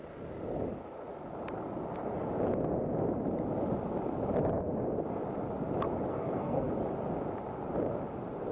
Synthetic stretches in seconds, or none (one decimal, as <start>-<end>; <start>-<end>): 6.1-6.7